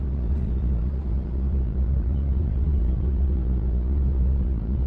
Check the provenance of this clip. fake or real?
fake